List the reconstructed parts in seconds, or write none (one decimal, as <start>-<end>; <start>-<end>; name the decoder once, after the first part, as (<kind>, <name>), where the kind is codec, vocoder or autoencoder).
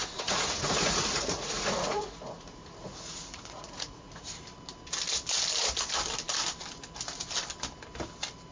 0.0-4.4 (vocoder, Vocos)